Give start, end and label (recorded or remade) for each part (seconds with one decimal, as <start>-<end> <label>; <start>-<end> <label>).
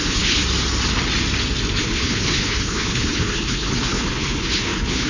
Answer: 0.0-0.4 remade; 0.4-1.8 recorded; 1.8-5.1 remade